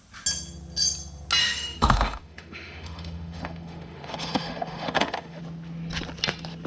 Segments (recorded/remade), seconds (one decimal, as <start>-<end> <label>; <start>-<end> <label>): 0.0-1.4 recorded; 1.4-5.4 remade; 5.4-6.7 recorded